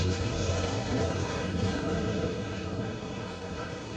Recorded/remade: remade